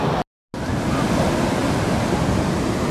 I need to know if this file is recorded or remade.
recorded